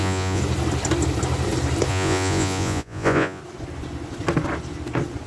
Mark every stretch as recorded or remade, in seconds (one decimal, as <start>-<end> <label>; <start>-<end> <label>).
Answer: 0.0-0.4 remade; 0.4-1.9 recorded; 1.9-3.4 remade; 3.4-5.3 recorded